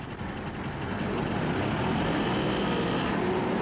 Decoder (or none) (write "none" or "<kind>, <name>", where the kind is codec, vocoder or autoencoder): vocoder, BigVGAN v2